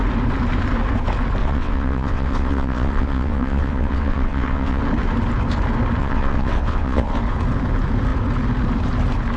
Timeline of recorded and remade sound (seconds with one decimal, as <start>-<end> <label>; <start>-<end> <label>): 0.0-1.4 recorded; 1.4-4.8 remade; 4.8-6.0 recorded; 6.0-7.1 remade; 7.1-9.4 recorded